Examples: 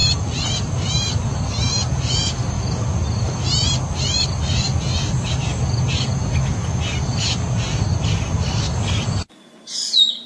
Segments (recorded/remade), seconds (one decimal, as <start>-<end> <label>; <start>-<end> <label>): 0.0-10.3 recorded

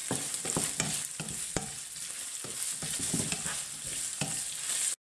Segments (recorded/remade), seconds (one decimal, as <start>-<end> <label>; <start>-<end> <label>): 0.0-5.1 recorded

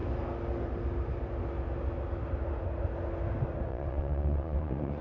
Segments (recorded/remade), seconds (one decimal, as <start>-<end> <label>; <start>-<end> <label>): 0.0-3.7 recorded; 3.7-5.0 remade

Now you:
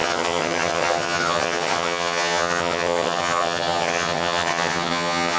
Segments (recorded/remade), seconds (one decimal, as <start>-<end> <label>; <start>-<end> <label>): 0.0-5.4 remade

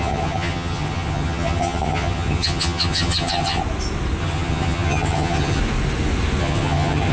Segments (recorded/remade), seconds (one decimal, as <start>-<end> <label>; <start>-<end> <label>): 0.0-3.6 remade; 3.6-4.2 recorded; 4.2-5.6 remade; 5.6-6.4 recorded; 6.4-7.1 remade

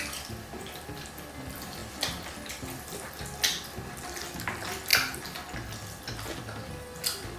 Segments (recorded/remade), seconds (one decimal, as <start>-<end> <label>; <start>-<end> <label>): 0.0-7.4 recorded

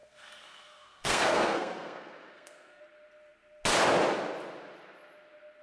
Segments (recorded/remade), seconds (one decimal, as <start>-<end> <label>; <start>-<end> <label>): 0.0-2.8 remade; 2.8-5.6 recorded

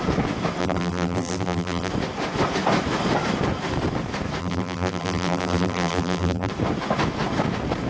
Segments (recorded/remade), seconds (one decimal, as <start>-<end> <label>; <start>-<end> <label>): 0.0-0.6 recorded; 0.6-1.9 remade; 1.9-4.4 recorded; 4.4-6.5 remade; 6.5-7.9 recorded